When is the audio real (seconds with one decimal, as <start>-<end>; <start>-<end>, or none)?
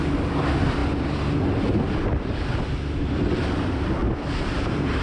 0.0-4.0